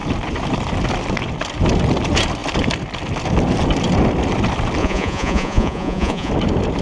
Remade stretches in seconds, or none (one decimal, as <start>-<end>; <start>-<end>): 4.8-6.3